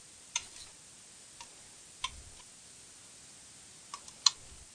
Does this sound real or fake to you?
real